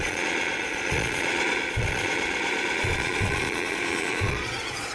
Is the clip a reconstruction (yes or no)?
yes